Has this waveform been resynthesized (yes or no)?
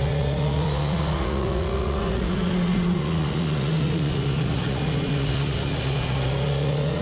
yes